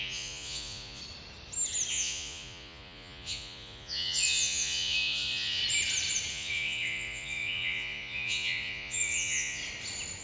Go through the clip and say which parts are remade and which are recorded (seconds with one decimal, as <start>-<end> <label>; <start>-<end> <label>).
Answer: 0.0-1.0 remade; 1.0-1.9 recorded; 1.9-5.6 remade; 5.6-6.3 recorded; 6.3-9.6 remade; 9.6-10.2 recorded